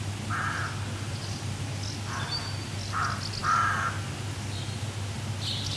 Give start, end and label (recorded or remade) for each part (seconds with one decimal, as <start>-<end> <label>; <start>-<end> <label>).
0.0-5.8 recorded